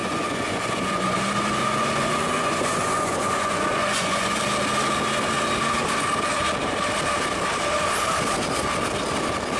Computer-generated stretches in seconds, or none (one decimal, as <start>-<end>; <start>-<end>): 0.0-1.2; 1.6-4.4